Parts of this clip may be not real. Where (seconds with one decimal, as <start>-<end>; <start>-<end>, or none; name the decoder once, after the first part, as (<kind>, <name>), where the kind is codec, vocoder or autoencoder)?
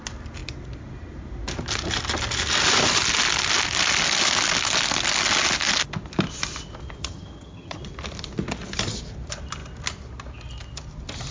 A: 7.0-7.8 (vocoder, HiFi-GAN)